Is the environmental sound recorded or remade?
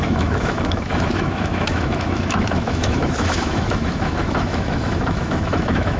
remade